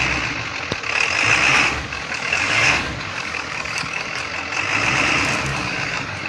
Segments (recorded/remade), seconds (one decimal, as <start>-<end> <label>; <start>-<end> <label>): 0.0-1.5 recorded; 1.5-4.3 remade; 4.3-5.5 recorded; 5.5-6.3 remade